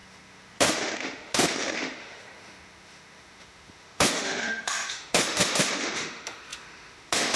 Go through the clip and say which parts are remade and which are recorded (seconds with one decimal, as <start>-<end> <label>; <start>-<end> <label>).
0.0-7.4 remade